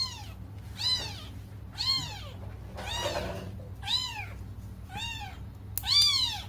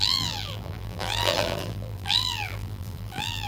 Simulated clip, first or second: second